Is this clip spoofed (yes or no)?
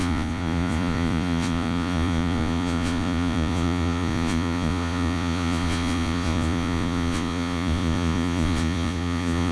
yes